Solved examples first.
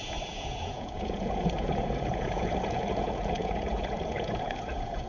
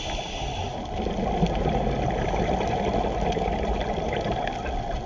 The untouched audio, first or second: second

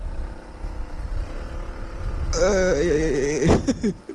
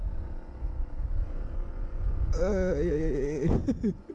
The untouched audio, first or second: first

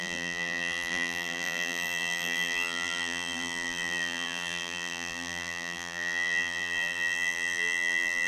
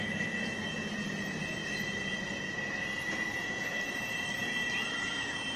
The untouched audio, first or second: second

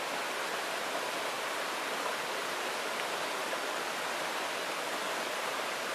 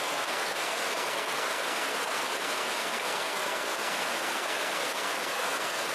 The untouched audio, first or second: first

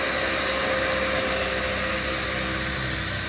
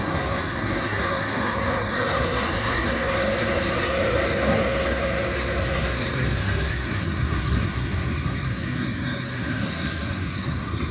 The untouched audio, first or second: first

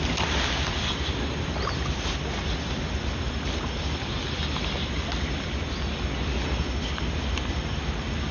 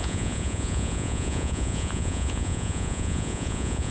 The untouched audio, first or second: first